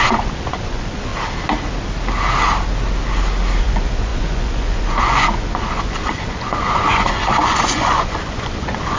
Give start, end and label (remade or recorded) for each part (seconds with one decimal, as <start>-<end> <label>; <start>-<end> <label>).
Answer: 0.0-1.1 remade; 1.1-3.6 recorded; 3.6-9.0 remade